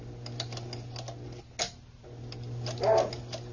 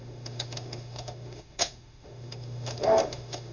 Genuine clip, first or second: first